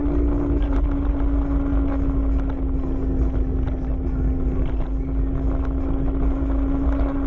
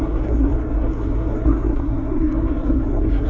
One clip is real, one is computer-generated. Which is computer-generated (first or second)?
second